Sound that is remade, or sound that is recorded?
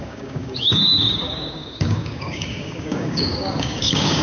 remade